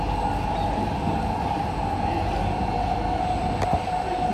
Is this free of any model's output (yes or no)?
yes